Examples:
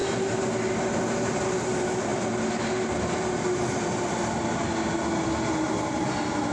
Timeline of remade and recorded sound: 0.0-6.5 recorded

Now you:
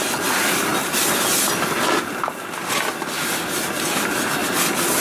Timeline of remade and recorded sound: 0.0-5.0 recorded

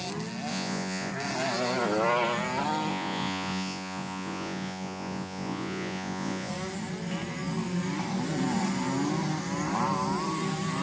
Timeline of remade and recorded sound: 0.0-0.5 recorded; 0.5-1.1 remade; 1.1-2.9 recorded; 2.9-6.5 remade; 6.5-10.8 recorded

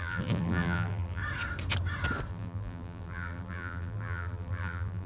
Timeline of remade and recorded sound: 0.0-1.2 remade; 1.2-2.3 recorded; 2.3-5.1 remade

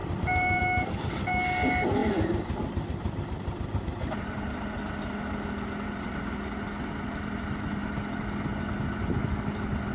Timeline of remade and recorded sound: 0.0-0.6 remade; 0.6-2.0 recorded; 2.0-5.6 remade; 5.6-9.9 recorded

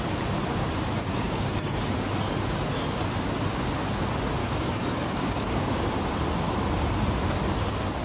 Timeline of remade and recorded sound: 0.0-1.1 recorded; 1.1-1.9 remade; 1.9-4.4 recorded; 4.4-5.9 remade; 5.9-8.0 recorded

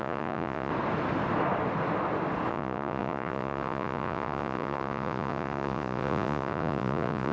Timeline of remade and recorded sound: 0.0-0.7 remade; 0.7-2.5 recorded; 2.5-7.3 remade

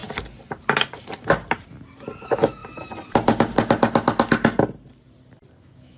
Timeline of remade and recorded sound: 0.0-2.2 recorded; 2.2-2.6 remade; 2.6-5.6 recorded; 5.6-6.0 remade